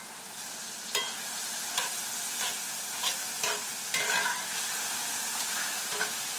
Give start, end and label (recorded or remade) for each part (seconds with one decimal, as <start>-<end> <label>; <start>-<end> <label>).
0.0-6.4 recorded